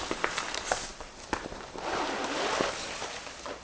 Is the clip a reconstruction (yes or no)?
no